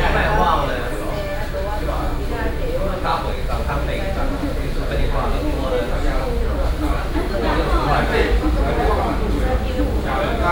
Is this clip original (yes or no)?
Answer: yes